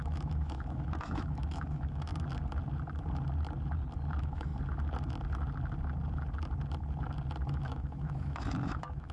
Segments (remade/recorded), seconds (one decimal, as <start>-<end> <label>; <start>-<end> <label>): 0.0-2.1 remade; 2.1-4.1 recorded; 4.1-4.5 remade; 4.5-7.5 recorded; 7.5-9.1 remade